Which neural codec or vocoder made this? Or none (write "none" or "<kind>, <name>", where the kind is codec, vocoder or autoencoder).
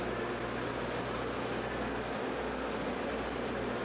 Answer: none